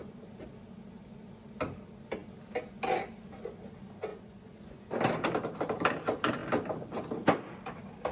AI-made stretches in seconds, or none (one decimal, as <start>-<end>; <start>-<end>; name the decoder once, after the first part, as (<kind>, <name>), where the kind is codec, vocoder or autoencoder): 4.1-4.9 (vocoder, Vocos)